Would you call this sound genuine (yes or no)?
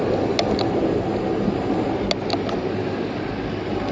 yes